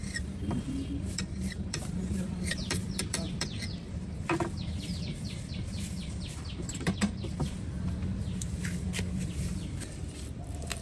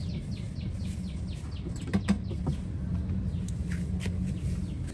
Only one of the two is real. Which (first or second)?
second